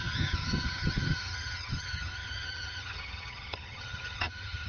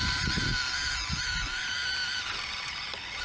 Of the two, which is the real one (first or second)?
second